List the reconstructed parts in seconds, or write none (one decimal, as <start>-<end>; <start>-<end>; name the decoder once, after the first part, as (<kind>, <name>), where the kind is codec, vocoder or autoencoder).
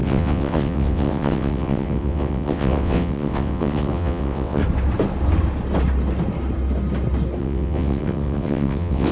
0.0-4.6 (vocoder, WaveNeXt); 7.4-9.1